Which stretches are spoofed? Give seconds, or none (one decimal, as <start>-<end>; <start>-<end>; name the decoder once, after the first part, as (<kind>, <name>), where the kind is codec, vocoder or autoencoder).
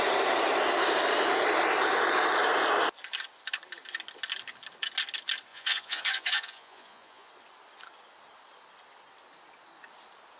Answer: 5.5-7.3 (vocoder, Vocos)